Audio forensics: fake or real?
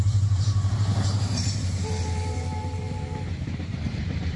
fake